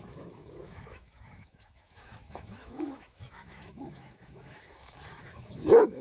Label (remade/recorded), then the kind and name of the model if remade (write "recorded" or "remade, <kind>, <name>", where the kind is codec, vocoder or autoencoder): remade, autoencoder, DAC-VAE